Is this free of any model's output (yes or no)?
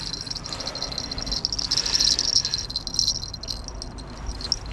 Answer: yes